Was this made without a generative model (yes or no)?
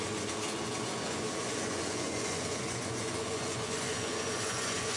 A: no